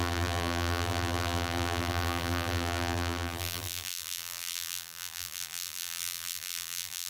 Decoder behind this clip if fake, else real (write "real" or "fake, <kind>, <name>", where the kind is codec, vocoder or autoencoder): fake, vocoder, BigVGAN v2